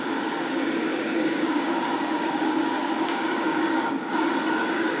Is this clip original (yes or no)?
no